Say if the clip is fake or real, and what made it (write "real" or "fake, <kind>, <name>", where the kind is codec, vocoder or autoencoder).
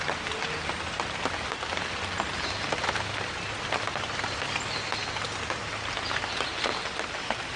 real